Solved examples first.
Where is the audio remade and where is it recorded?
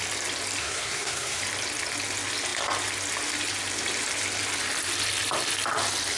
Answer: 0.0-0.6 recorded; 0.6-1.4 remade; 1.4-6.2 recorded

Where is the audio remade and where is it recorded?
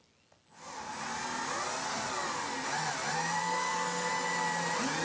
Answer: 0.0-3.4 recorded; 3.4-4.1 remade; 4.1-5.0 recorded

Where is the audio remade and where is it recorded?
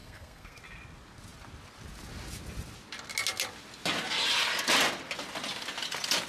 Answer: 0.0-0.6 remade; 0.6-6.3 recorded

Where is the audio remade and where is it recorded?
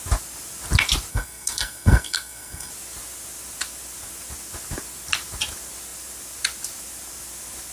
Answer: 0.0-1.1 recorded; 1.1-2.7 remade; 2.7-7.7 recorded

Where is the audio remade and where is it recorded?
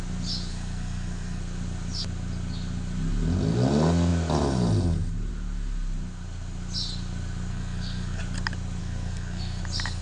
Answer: 0.0-0.5 recorded; 0.5-1.4 remade; 1.4-7.5 recorded; 7.5-8.2 remade; 8.2-8.8 recorded; 8.8-9.6 remade; 9.6-10.0 recorded